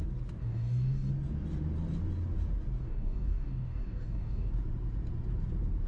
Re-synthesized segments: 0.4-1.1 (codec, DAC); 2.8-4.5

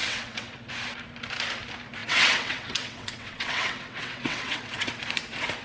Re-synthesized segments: 0.0-0.7 (vocoder, WaveNeXt); 2.0-4.9

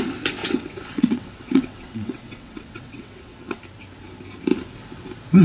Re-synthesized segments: 0.4-3.6 (vocoder, WaveNeXt)

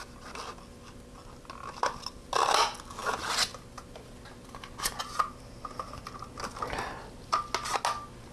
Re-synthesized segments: none

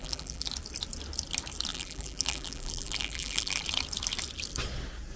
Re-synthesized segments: 0.0-0.5 (vocoder, BigVGAN v2); 1.7-3.6

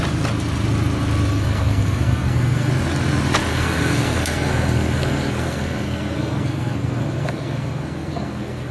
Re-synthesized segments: 1.3-2.7 (codec, SNAC); 3.5-8.7

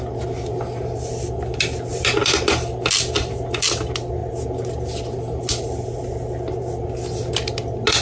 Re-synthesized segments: none